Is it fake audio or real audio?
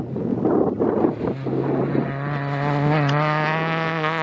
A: real